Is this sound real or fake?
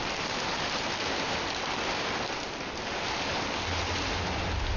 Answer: real